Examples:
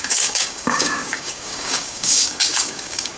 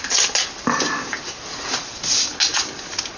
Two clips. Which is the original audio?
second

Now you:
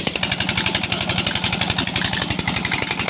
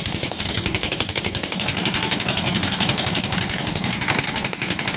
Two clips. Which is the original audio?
first